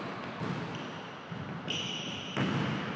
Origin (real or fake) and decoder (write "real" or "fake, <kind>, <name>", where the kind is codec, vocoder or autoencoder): real